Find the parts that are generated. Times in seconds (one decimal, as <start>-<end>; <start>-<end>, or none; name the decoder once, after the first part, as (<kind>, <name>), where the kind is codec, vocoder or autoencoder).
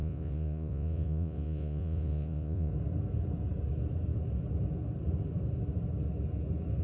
0.0-2.7 (vocoder, Vocos)